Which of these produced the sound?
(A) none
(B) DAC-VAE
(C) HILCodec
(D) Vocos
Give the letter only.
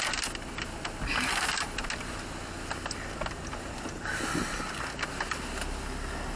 A